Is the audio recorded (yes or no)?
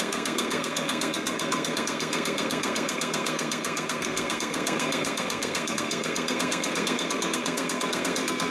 no